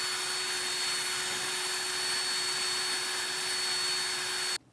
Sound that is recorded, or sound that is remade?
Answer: recorded